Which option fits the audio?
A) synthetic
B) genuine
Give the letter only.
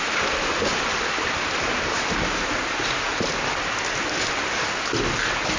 B